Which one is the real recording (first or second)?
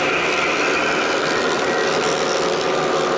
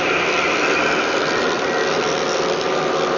first